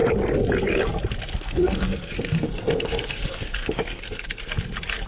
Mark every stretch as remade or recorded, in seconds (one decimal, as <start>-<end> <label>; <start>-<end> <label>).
0.0-1.3 recorded; 1.3-4.4 remade; 4.4-5.1 recorded